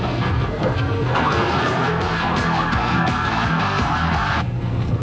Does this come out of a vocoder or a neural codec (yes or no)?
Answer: yes